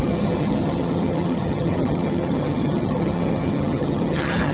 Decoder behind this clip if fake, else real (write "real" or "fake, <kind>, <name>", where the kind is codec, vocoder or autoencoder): fake, vocoder, HiFi-GAN